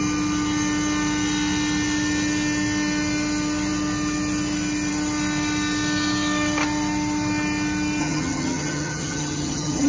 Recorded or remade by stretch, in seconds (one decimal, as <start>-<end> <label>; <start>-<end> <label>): 0.0-8.0 recorded; 8.0-9.9 remade